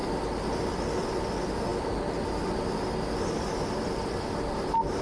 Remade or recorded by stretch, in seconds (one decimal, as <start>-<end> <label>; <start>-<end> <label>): 0.0-5.0 recorded